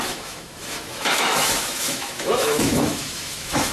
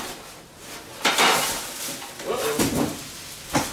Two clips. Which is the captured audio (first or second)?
second